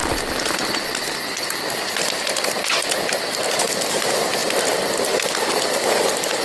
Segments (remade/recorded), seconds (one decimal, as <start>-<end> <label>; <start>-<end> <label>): 0.0-6.4 recorded